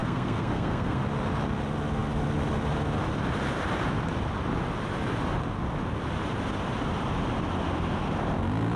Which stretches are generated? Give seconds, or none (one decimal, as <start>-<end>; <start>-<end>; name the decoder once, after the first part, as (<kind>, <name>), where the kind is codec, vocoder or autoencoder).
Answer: 0.0-1.0 (codec, SNAC)